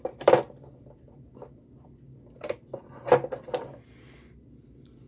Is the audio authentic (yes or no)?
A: yes